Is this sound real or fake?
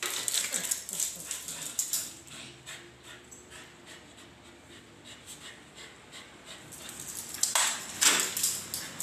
real